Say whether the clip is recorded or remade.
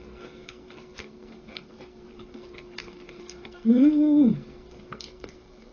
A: remade